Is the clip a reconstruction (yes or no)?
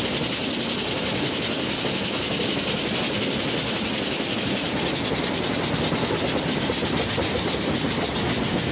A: no